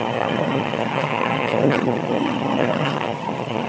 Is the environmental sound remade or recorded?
remade